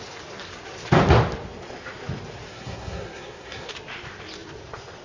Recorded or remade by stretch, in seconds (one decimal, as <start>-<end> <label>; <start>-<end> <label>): 0.0-2.5 recorded; 2.5-3.7 remade; 3.7-5.0 recorded